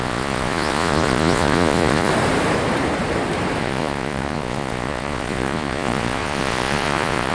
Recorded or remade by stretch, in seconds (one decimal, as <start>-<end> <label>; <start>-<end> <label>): 0.0-2.1 remade; 2.1-3.6 recorded; 3.6-7.3 remade